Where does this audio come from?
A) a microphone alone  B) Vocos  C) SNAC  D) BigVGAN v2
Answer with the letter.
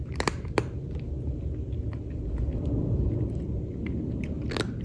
A